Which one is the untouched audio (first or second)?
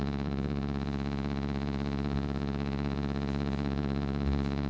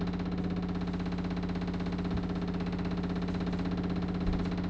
second